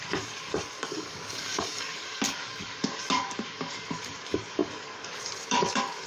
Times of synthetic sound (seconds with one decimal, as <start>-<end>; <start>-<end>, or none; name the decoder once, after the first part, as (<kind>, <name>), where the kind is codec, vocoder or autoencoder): 0.0-6.1 (codec, DAC)